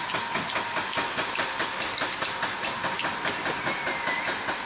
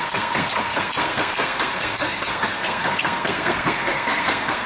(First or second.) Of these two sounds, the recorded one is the first